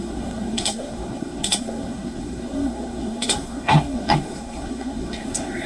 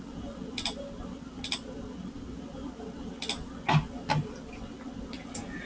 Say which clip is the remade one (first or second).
first